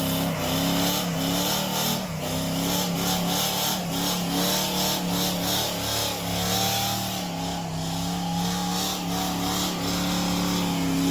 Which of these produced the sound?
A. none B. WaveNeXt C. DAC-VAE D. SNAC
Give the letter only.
A